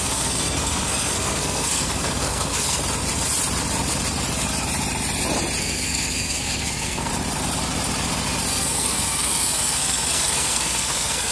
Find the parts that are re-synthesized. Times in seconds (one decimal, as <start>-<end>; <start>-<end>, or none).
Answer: 0.0-2.8; 5.6-7.1; 8.5-11.3